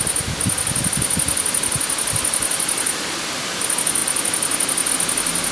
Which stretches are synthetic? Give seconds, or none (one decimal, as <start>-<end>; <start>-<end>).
none